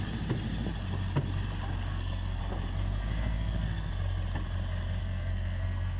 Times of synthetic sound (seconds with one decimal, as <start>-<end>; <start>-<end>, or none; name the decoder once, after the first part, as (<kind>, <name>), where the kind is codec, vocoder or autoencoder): 1.9-2.4 (codec, SNAC); 2.8-3.9; 5.0-6.0